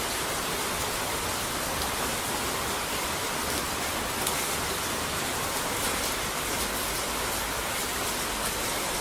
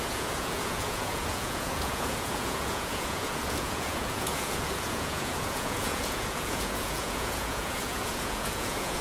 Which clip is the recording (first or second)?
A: first